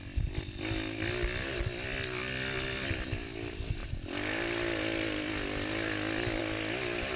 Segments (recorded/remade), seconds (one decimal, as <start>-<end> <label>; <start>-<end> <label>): 0.0-7.2 recorded